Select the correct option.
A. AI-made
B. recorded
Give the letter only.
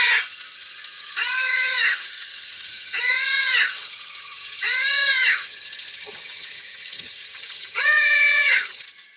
A